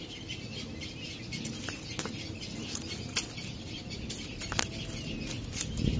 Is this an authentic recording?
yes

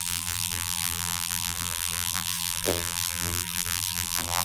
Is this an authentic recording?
no